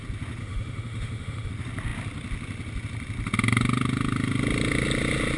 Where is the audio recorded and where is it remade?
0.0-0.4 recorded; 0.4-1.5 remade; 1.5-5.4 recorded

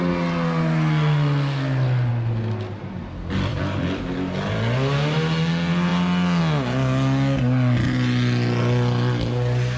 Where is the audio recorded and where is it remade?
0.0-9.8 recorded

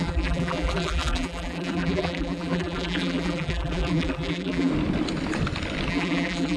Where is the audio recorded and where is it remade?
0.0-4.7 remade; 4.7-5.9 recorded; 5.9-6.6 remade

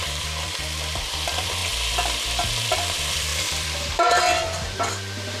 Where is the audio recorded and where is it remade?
0.0-1.6 remade; 1.6-2.6 recorded; 2.6-5.4 remade